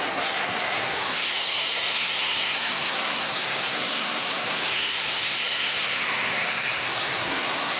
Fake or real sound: fake